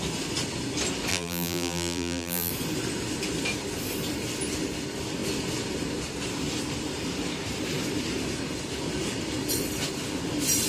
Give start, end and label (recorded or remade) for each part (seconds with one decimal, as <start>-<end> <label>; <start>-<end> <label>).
0.0-1.1 recorded; 1.1-2.5 remade; 2.5-10.7 recorded